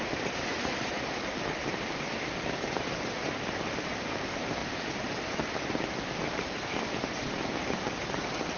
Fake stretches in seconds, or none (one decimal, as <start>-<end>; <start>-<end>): 0.0-0.9; 2.3-4.6